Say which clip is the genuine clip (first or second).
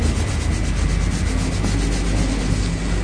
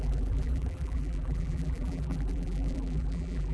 first